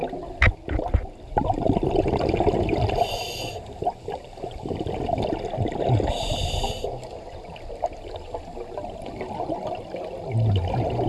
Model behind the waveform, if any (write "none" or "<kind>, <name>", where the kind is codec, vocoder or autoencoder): none